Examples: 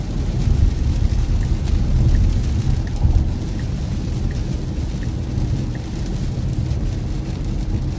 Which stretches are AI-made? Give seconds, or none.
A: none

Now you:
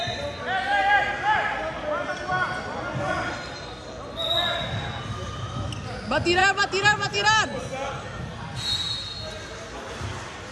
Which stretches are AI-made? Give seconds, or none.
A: none

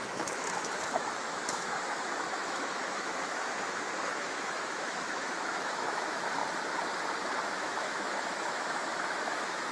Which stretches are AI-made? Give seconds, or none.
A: 0.0-6.4 (autoencoder, DAC-VAE); 7.4-9.7

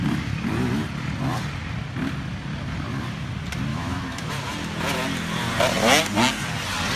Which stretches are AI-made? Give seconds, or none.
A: 3.7-4.3 (autoencoder, DAC-VAE)

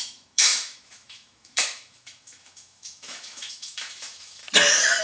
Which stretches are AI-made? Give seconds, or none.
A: 0.0-4.4 (autoencoder, DAC-VAE)

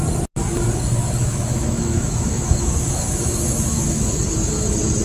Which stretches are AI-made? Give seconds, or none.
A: 1.2-4.2 (autoencoder, DAC-VAE)